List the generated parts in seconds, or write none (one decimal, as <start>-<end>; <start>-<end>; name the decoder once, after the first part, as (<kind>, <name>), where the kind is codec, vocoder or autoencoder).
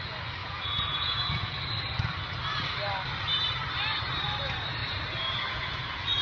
0.4-1.6 (vocoder, Vocos); 4.8-6.2